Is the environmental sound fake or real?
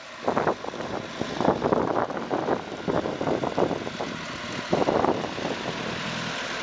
real